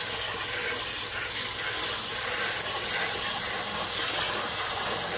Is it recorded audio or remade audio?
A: recorded